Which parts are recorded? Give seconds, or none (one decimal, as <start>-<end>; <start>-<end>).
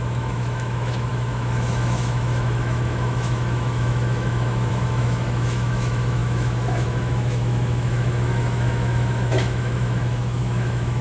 none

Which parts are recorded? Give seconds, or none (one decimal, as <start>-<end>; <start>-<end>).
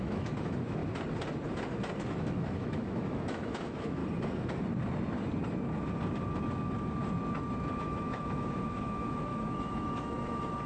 0.8-2.0; 4.0-7.8